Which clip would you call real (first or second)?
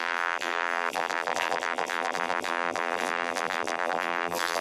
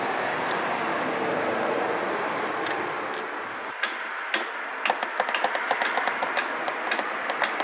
second